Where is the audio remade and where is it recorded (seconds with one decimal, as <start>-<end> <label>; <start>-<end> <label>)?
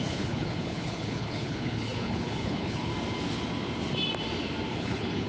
0.0-2.9 remade; 2.9-4.7 recorded; 4.7-5.3 remade